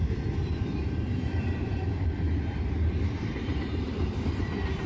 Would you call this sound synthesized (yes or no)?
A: yes